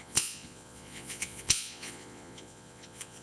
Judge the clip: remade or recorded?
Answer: remade